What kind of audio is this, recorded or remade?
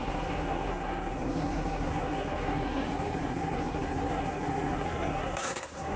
remade